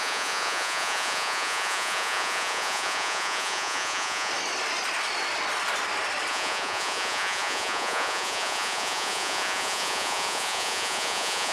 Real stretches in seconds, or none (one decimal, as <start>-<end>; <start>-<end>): 4.3-6.3